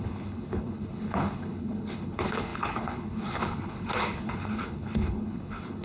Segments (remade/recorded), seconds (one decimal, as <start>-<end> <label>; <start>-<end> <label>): 0.0-5.8 remade